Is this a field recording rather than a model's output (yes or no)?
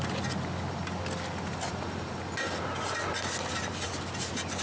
yes